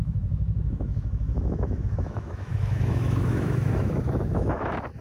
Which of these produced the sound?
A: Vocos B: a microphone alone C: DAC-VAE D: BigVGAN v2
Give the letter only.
C